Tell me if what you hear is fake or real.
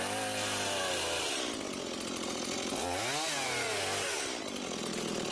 real